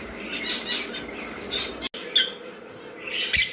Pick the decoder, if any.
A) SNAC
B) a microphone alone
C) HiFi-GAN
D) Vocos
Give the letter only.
B